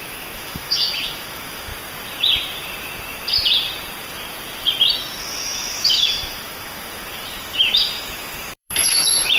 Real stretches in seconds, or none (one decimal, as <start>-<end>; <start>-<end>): 1.7-5.2